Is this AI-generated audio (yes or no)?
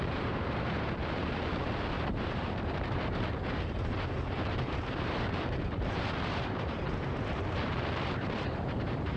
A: yes